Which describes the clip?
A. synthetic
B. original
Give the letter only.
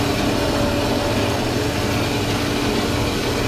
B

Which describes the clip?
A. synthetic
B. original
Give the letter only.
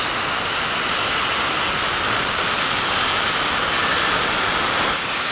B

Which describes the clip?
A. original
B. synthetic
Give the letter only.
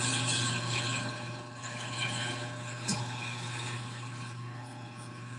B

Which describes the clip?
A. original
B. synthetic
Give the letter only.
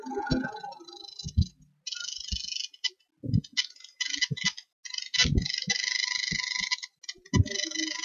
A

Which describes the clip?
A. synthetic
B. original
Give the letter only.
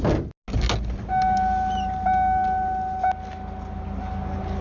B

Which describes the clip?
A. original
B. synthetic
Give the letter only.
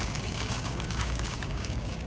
B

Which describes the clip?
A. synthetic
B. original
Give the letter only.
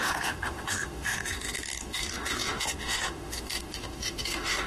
A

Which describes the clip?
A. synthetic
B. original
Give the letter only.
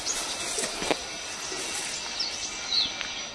B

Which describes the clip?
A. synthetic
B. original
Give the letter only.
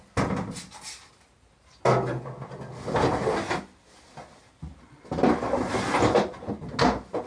B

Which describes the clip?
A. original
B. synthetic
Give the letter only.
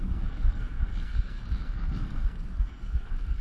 B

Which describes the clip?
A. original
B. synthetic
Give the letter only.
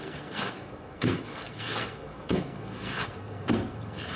B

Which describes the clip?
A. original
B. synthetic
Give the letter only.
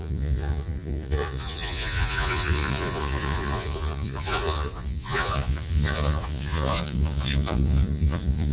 B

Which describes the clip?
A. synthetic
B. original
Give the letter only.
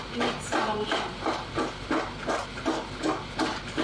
B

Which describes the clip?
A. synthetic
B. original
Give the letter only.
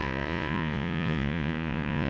A